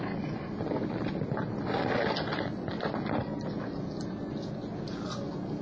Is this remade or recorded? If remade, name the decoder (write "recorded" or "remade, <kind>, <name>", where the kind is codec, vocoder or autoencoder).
recorded